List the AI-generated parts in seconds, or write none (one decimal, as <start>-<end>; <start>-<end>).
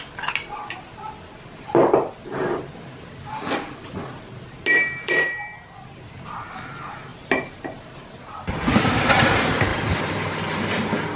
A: none